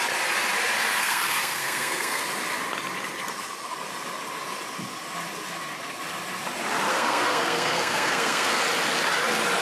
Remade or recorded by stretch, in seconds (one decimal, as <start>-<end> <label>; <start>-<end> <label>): 0.0-1.0 recorded; 1.0-2.2 remade; 2.2-6.9 recorded; 6.9-8.6 remade; 8.6-9.6 recorded